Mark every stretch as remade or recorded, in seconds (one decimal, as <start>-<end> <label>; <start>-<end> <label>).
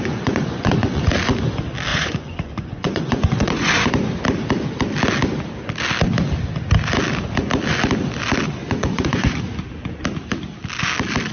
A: 0.0-1.0 remade; 1.0-1.9 recorded; 1.9-3.9 remade; 3.9-8.6 recorded; 8.6-9.4 remade; 9.4-11.3 recorded